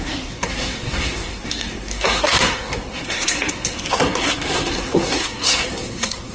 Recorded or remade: remade